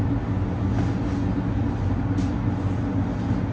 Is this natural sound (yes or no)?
yes